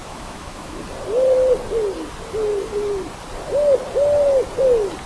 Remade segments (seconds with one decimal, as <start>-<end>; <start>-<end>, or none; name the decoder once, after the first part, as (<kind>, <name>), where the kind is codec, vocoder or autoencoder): 0.0-0.8 (autoencoder, DAC-VAE)